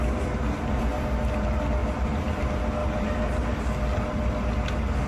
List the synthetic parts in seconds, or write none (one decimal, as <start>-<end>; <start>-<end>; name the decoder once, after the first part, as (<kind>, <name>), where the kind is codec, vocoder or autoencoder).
1.8-2.4 (vocoder, BigVGAN v2); 2.8-3.6